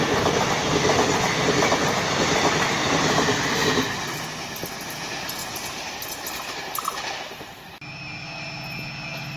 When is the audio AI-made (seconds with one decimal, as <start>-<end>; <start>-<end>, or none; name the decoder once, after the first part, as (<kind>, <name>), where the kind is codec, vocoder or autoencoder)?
none